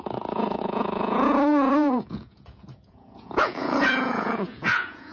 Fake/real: fake